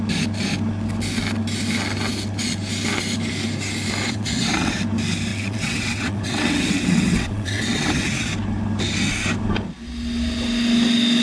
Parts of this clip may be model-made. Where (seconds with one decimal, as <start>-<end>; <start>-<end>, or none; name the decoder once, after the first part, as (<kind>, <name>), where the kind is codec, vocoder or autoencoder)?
4.0-4.8 (vocoder, WaveNeXt); 5.3-8.3